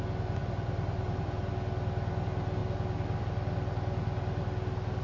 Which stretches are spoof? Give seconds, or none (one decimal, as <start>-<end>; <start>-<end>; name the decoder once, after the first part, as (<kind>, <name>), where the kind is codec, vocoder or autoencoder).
0.4-1.5 (vocoder, BigVGAN v2)